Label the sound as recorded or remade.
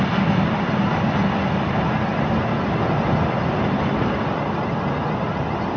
recorded